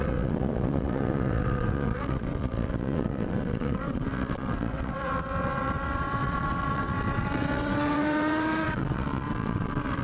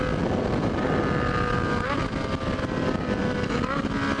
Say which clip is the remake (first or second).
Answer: first